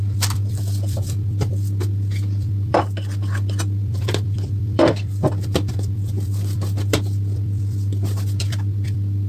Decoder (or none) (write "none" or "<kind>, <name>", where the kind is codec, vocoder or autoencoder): vocoder, BigVGAN v2